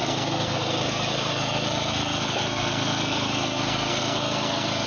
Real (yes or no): no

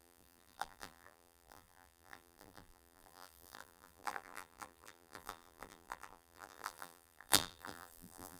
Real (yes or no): no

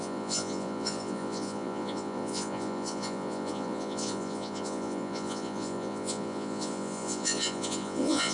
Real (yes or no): no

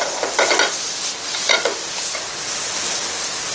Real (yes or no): yes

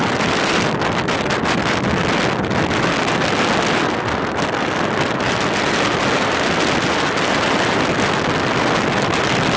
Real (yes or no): yes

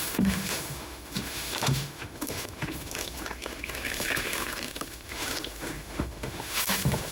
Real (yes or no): no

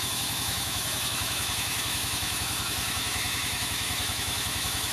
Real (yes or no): no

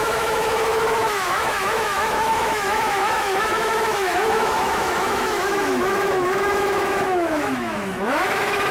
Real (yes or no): no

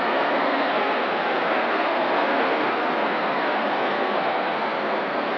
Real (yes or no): no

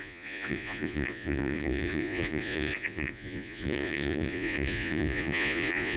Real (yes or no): no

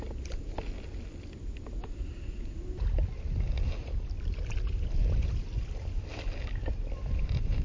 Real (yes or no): yes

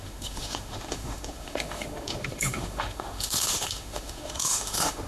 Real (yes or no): no